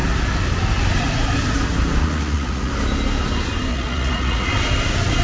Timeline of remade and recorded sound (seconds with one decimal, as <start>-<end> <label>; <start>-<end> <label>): 0.0-2.0 recorded; 2.0-2.7 remade; 2.7-3.7 recorded; 3.7-4.5 remade; 4.5-5.2 recorded